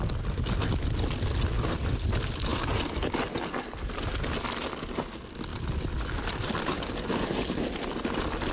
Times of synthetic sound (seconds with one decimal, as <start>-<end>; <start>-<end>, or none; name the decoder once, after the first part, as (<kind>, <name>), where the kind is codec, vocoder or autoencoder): 2.5-3.1 (vocoder, BigVGAN v2)